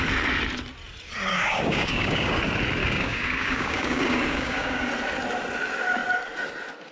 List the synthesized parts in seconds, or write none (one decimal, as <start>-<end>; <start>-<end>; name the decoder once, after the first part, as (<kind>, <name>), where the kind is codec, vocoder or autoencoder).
1.3-2.4 (codec, DAC); 2.8-4.9